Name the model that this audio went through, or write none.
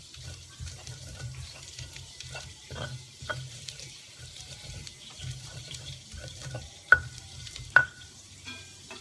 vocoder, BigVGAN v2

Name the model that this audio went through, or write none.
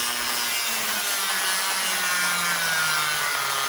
none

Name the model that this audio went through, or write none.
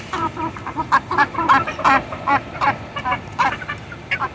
vocoder, BigVGAN v2